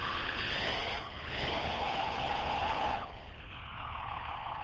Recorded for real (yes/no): no